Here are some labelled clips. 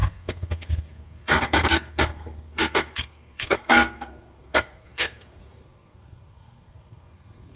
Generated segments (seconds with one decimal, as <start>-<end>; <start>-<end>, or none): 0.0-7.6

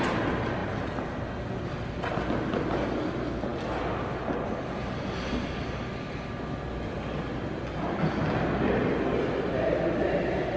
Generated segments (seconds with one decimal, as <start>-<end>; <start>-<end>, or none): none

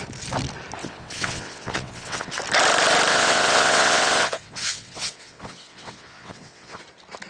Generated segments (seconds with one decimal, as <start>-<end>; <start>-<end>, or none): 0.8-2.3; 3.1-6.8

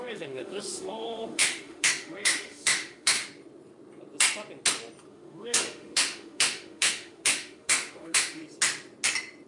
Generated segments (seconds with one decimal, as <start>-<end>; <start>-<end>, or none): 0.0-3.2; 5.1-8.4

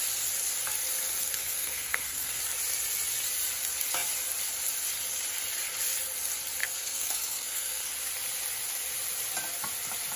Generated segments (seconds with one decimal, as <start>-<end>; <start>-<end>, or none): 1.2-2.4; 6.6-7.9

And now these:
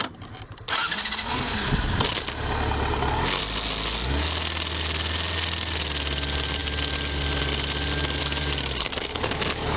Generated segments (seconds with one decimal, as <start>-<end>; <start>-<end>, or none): 8.2-9.8

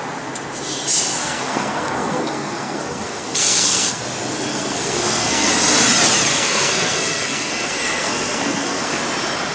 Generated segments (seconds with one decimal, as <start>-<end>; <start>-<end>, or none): 1.2-4.0; 4.5-5.5; 6.3-9.0